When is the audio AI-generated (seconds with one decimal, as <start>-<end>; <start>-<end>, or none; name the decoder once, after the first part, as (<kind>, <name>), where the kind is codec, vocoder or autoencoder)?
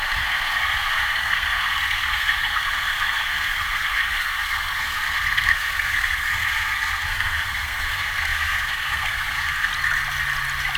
0.0-9.7 (codec, SNAC)